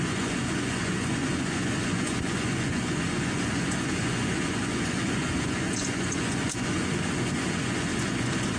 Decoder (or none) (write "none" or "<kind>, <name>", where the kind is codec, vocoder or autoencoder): vocoder, Vocos